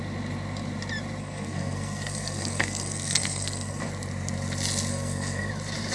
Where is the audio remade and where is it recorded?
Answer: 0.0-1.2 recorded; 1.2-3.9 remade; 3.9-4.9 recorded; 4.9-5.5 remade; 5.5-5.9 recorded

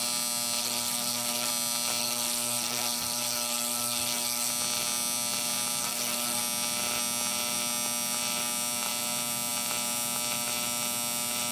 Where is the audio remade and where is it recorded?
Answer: 0.0-0.6 recorded; 0.6-1.5 remade; 1.5-2.0 recorded; 2.0-4.5 remade; 4.5-5.8 recorded; 5.8-6.4 remade; 6.4-11.5 recorded